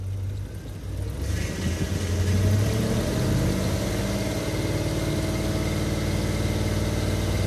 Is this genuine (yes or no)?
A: yes